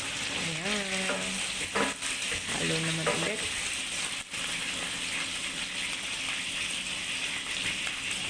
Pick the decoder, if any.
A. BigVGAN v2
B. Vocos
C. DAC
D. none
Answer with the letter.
D